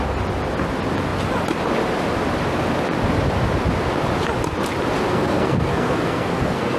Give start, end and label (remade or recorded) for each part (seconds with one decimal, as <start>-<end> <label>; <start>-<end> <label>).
0.0-5.1 recorded; 5.1-6.8 remade